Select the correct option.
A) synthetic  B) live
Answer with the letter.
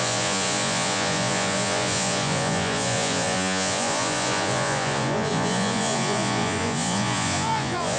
A